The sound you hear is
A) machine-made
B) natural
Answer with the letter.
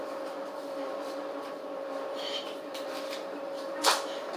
A